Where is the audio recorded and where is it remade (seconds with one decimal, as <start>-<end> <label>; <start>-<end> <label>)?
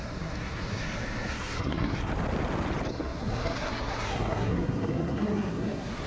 0.0-2.1 remade; 2.1-2.9 recorded; 2.9-6.1 remade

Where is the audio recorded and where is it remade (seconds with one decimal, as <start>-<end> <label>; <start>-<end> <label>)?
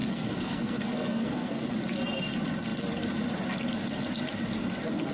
0.0-1.7 remade; 1.7-5.1 recorded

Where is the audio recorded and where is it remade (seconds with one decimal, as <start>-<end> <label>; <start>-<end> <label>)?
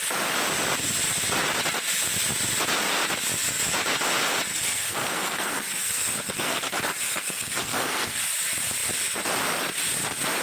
0.0-4.5 recorded; 4.5-8.2 remade; 8.2-10.4 recorded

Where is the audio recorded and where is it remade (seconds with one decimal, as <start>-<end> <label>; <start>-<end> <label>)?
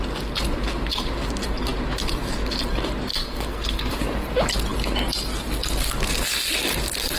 0.0-3.1 recorded; 3.1-3.9 remade; 3.9-7.2 recorded